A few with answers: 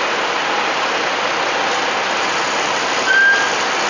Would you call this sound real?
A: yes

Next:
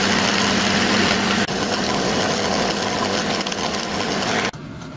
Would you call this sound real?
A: yes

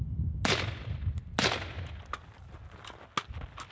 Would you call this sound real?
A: yes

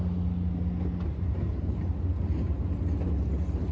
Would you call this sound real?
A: yes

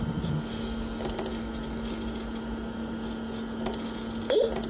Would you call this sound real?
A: yes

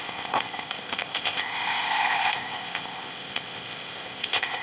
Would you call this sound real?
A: no